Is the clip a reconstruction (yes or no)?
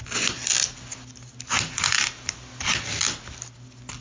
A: no